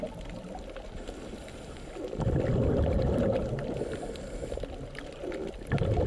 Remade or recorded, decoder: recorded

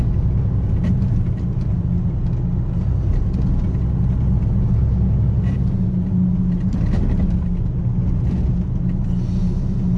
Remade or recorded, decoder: recorded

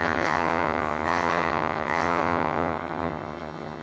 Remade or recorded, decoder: remade, vocoder, HiFi-GAN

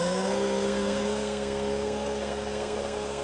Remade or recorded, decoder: remade, codec, SNAC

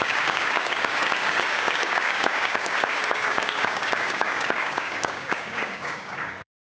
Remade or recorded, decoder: remade, codec, DAC